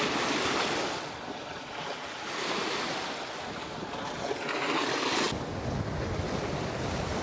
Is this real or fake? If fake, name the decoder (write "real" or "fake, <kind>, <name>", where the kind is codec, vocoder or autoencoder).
real